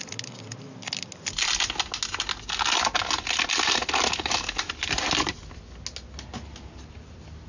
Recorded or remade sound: recorded